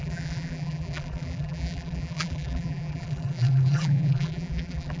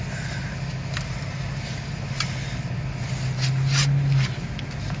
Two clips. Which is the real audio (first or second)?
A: second